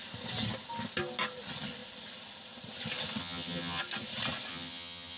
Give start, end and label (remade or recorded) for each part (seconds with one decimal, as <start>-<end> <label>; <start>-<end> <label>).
0.0-3.2 recorded; 3.2-3.8 remade; 3.8-4.5 recorded; 4.5-5.2 remade